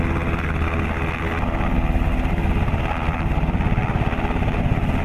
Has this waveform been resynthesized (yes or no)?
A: no